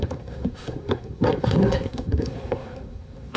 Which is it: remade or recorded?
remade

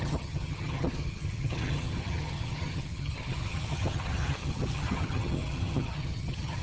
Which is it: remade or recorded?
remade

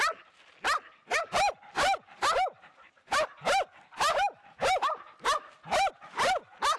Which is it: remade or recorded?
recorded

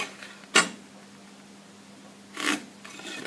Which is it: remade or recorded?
recorded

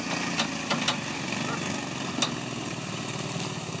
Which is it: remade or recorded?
recorded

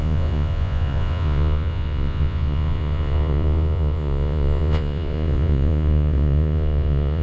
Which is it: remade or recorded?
remade